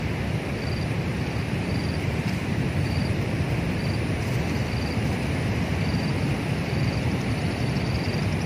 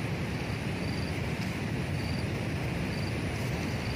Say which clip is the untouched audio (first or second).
second